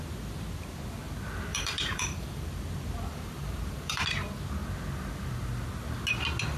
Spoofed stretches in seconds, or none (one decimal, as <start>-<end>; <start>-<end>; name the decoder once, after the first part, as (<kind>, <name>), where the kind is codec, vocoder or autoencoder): 1.5-2.4 (vocoder, BigVGAN v2); 3.1-4.0